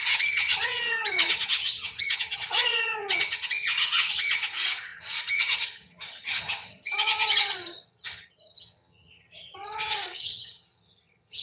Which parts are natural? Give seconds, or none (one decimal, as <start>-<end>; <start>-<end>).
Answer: none